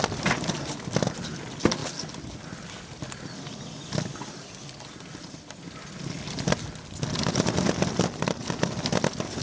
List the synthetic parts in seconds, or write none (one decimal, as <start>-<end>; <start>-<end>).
none